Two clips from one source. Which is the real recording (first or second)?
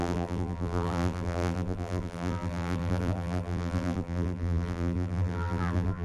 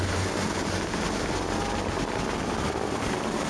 second